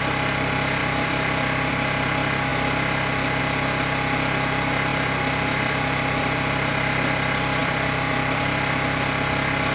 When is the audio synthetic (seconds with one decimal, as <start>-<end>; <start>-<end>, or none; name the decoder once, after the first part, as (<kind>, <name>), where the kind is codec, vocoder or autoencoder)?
0.8-1.7 (vocoder, BigVGAN v2); 4.9-6.7; 7.6-8.4